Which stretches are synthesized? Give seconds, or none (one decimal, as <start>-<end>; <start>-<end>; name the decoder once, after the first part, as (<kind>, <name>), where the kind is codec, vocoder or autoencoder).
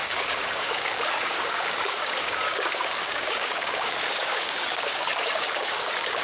0.0-6.2 (codec, DAC)